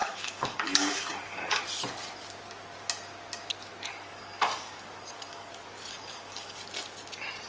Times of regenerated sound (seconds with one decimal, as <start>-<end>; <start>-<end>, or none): 0.0-1.6; 3.9-5.5; 5.9-6.6